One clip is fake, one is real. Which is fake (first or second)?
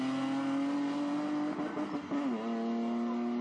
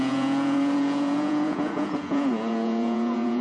second